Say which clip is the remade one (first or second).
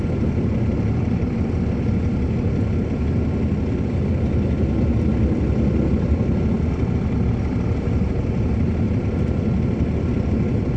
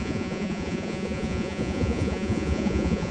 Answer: second